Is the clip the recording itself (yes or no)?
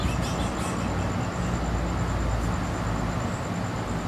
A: yes